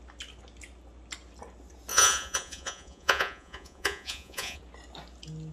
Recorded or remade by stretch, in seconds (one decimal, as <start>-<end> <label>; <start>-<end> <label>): 0.0-1.9 recorded; 1.9-4.6 remade; 4.6-5.5 recorded